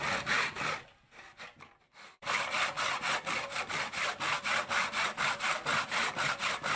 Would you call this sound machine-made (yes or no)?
yes